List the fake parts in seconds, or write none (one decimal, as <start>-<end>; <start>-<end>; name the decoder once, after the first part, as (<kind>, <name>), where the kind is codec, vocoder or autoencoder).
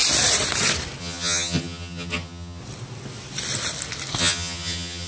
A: 1.0-2.6 (vocoder, HiFi-GAN); 4.2-5.1